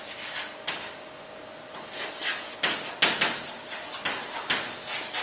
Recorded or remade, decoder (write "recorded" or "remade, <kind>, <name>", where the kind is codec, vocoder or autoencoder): recorded